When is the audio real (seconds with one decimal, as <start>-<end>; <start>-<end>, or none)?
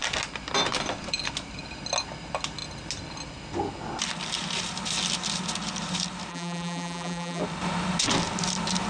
0.0-6.3; 7.4-8.9